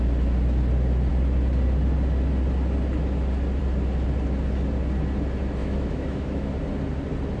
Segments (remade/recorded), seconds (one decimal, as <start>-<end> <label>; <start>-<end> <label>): 0.0-5.6 recorded; 5.6-6.5 remade; 6.5-7.4 recorded